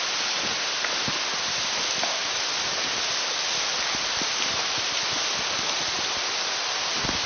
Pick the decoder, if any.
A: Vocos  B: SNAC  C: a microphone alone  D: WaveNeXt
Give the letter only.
C